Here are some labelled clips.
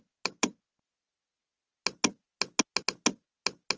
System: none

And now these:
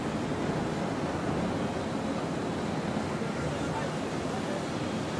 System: none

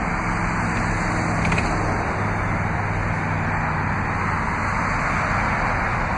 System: none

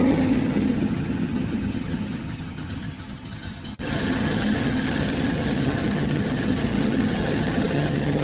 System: vocoder, HiFi-GAN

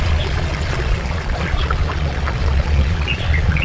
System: vocoder, Vocos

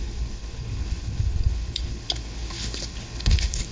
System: codec, HILCodec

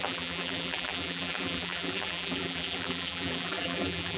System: vocoder, BigVGAN v2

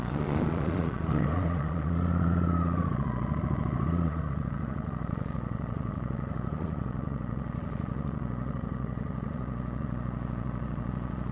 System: vocoder, Vocos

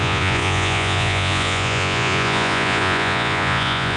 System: vocoder, Vocos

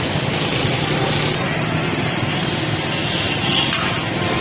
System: none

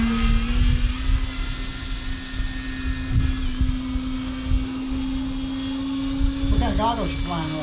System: none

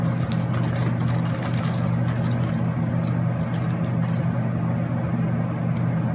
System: none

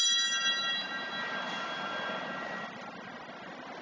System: none